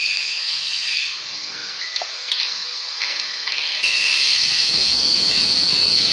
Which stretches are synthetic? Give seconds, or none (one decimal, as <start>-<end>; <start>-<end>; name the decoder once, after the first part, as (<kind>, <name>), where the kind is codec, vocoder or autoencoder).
0.0-6.1 (codec, SNAC)